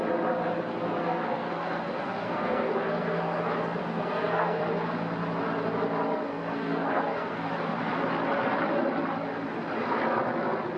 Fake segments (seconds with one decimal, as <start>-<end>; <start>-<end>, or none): 1.0-3.4; 3.8-4.6; 6.3-7.5